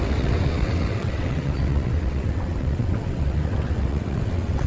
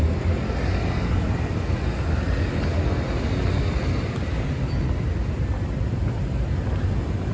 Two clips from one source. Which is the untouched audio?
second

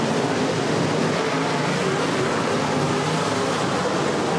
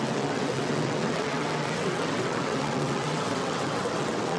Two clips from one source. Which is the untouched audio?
first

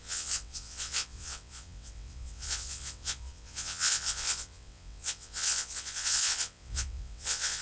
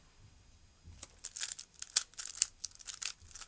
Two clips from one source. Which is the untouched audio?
second